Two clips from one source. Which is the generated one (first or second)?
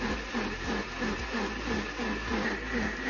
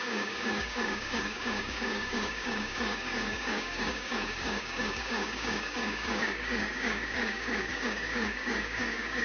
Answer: second